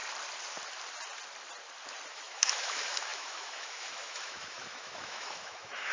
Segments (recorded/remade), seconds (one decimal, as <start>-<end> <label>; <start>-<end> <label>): 0.0-2.1 recorded; 2.1-5.9 remade